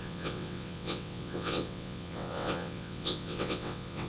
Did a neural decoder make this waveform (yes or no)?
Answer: yes